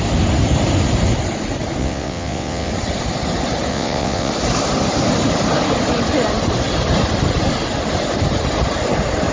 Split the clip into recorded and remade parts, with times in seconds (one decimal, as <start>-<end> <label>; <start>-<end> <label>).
0.0-1.8 recorded; 1.8-2.7 remade; 2.7-3.7 recorded; 3.7-4.3 remade; 4.3-9.3 recorded